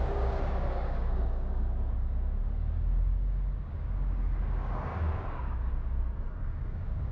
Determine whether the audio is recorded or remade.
remade